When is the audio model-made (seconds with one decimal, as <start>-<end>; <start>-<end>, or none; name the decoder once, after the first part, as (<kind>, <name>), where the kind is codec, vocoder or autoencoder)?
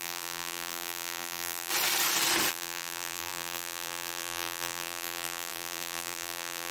0.0-1.7 (vocoder, BigVGAN v2); 2.5-6.7